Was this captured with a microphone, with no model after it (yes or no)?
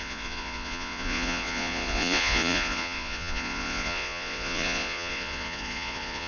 no